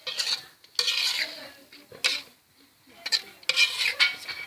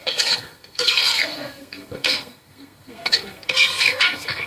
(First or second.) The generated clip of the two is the second